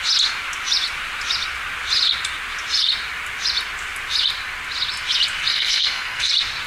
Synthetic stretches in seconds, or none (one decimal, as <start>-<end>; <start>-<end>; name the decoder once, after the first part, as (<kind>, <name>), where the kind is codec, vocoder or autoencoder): 5.5-6.3 (codec, SNAC)